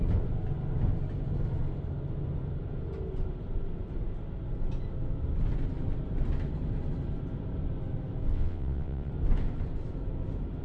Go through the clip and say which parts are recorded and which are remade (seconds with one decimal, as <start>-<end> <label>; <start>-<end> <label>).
0.0-8.3 recorded; 8.3-9.1 remade; 9.1-10.6 recorded